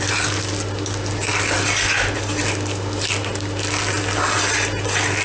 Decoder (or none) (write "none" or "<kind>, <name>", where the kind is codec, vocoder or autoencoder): none